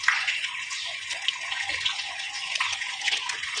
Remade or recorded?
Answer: remade